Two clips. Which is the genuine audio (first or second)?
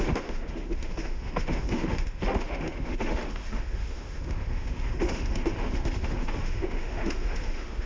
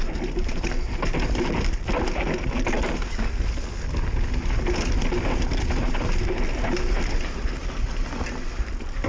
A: second